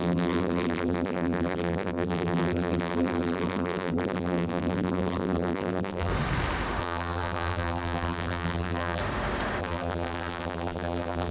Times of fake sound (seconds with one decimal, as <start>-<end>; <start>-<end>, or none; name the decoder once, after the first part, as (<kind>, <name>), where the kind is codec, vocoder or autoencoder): 0.0-6.1 (vocoder, BigVGAN v2); 6.8-9.0; 9.6-11.3